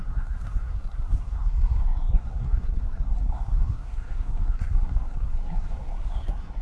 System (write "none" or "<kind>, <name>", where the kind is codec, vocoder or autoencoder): codec, SNAC